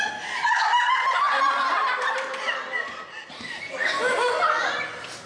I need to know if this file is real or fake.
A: real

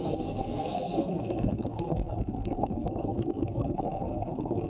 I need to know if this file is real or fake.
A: fake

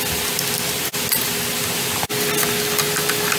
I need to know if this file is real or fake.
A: real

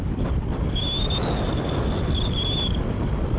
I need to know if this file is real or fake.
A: real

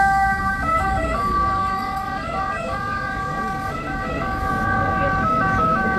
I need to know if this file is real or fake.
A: fake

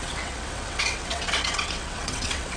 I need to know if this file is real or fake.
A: fake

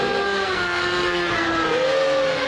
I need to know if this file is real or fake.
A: fake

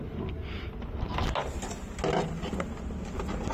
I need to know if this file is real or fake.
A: real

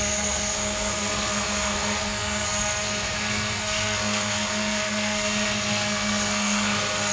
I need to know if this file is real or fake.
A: fake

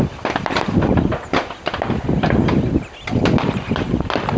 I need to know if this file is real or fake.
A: real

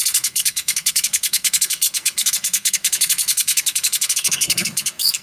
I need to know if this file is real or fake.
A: fake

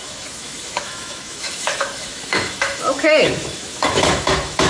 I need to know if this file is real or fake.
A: fake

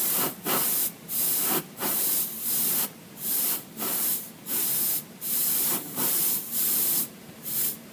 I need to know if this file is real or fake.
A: fake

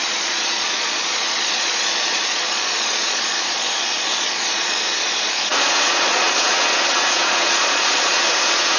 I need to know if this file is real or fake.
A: fake